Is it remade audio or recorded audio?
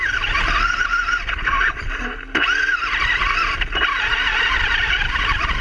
recorded